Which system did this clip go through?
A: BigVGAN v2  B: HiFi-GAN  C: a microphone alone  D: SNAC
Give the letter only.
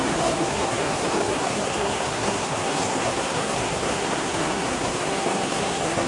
D